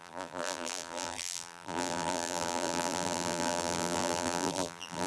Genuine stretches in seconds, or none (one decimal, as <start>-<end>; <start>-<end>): none